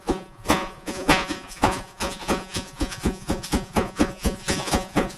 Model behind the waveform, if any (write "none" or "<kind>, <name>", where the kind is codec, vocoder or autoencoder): vocoder, Vocos